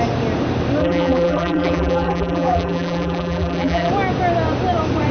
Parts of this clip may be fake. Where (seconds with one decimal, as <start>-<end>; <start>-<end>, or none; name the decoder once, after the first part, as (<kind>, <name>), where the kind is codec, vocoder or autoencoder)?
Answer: 0.8-3.9 (vocoder, BigVGAN v2)